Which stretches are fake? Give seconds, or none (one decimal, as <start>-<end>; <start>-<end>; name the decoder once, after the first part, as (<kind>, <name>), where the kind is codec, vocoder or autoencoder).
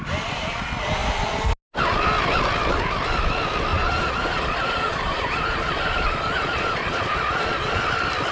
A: 3.7-7.9 (vocoder, Vocos)